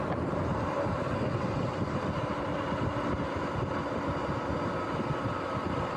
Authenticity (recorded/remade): recorded